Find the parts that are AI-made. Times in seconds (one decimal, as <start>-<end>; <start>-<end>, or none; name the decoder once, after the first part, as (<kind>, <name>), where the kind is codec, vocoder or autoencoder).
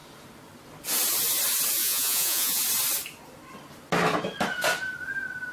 1.8-2.6 (vocoder, Vocos)